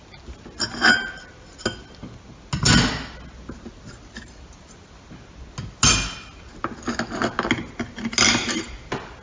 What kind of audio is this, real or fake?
real